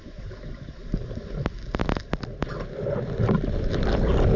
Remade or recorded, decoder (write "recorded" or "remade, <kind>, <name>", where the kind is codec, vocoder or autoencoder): recorded